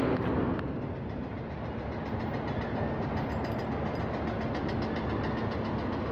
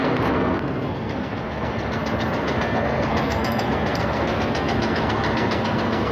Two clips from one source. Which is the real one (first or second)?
first